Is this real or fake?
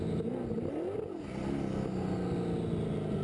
real